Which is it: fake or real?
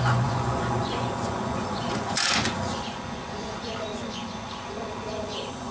fake